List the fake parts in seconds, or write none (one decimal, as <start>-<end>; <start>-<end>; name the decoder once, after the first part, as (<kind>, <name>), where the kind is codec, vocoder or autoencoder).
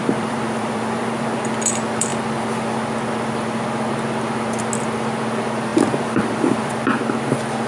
0.0-1.4 (vocoder, BigVGAN v2); 5.7-6.7